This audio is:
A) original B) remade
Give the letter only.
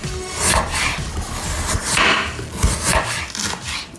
A